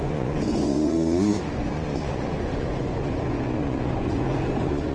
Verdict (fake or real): fake